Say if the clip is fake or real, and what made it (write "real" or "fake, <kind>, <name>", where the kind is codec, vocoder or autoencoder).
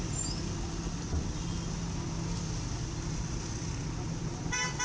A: real